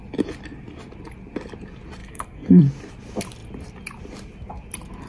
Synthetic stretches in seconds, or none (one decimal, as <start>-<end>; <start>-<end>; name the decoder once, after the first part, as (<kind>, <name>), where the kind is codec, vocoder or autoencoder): 2.0-2.6 (codec, SNAC)

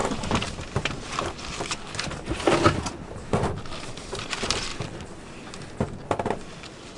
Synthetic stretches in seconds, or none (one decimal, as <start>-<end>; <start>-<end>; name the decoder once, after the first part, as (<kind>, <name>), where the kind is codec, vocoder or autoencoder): 4.0-4.7 (vocoder, BigVGAN v2)

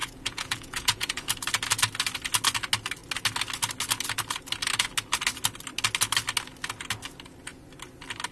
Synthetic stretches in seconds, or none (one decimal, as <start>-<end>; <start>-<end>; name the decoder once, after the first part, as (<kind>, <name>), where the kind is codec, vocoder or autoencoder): 0.0-1.3 (vocoder, Vocos)

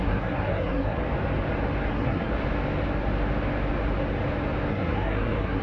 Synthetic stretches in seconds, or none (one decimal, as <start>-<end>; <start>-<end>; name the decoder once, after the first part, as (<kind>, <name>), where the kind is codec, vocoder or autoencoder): 0.0-1.0 (codec, SNAC); 1.9-2.3; 4.7-5.6